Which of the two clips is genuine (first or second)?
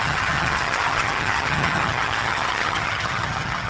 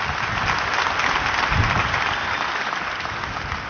second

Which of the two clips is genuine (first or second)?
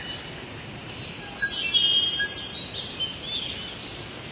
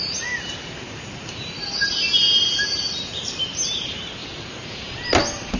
first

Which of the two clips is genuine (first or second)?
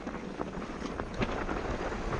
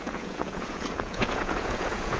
first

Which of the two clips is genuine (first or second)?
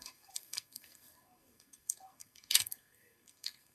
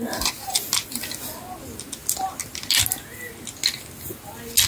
second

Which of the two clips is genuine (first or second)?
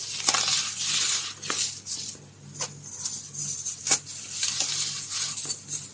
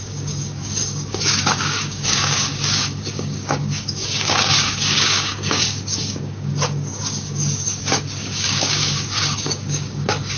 first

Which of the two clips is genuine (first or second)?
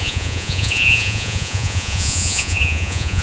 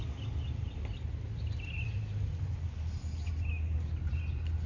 second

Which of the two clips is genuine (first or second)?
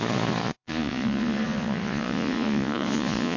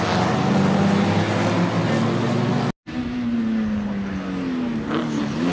second